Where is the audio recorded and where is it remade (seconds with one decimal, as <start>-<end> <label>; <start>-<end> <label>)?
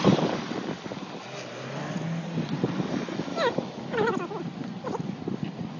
0.0-5.8 recorded